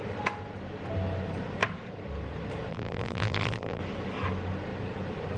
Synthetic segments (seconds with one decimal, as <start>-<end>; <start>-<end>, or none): 2.7-3.8